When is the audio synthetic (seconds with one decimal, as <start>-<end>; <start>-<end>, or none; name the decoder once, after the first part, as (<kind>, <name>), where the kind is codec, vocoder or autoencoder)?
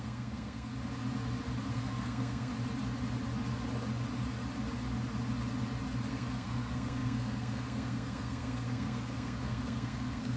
0.0-0.7 (codec, SNAC); 1.7-2.5; 6.1-10.4